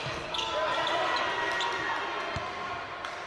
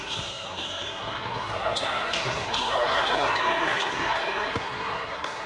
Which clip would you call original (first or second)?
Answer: first